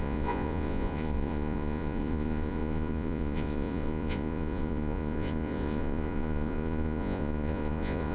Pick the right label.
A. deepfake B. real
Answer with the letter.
A